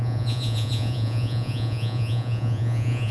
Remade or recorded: remade